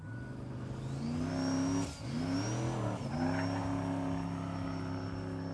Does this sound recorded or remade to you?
recorded